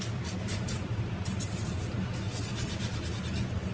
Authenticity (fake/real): real